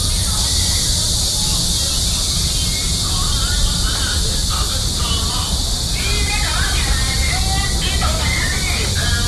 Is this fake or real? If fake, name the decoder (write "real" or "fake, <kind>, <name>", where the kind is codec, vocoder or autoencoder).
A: real